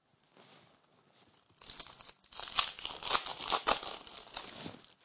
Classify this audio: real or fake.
real